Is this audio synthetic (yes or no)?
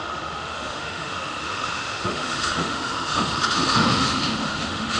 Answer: yes